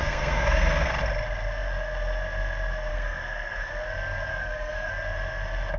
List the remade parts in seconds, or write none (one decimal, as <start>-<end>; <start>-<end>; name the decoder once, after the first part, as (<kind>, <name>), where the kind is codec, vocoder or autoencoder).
0.0-0.9 (codec, SNAC); 2.9-3.7; 4.3-4.9